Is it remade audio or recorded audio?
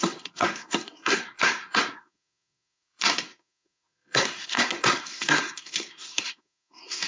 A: remade